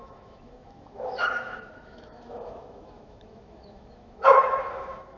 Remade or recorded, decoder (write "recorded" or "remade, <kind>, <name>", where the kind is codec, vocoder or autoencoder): remade, autoencoder, DAC-VAE